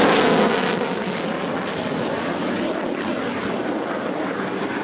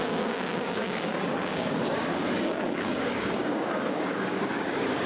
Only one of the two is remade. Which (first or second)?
second